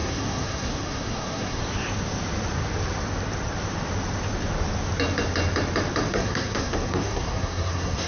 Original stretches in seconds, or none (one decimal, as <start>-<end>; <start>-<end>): 1.6-6.1